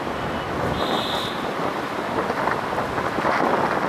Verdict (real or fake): real